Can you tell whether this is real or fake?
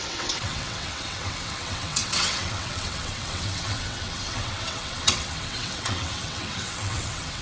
fake